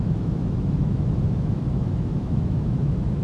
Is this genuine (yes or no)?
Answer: no